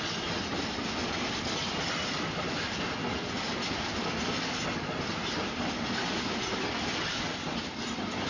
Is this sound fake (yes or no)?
no